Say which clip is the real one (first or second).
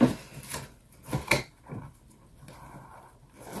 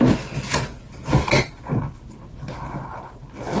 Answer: second